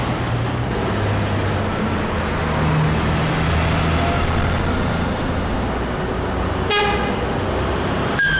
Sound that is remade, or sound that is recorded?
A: recorded